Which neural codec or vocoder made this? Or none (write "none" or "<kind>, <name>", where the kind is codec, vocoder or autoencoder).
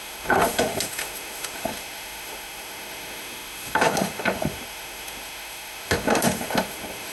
autoencoder, DAC-VAE